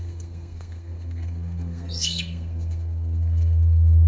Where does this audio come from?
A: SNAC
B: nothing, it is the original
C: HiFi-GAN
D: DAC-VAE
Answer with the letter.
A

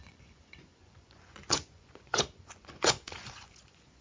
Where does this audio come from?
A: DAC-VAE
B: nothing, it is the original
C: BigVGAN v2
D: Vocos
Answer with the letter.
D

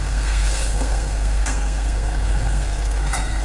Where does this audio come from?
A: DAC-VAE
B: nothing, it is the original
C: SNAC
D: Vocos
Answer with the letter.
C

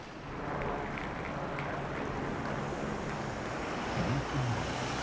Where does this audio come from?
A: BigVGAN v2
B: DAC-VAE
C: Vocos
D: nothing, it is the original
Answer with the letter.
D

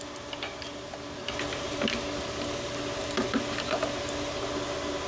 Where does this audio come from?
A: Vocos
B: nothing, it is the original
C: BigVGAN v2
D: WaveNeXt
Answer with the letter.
B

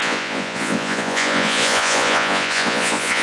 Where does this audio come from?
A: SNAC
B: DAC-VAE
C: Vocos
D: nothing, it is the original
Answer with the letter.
C